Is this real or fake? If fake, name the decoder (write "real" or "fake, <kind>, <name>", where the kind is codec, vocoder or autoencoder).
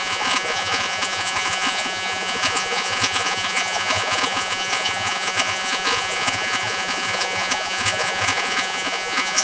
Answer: fake, vocoder, Vocos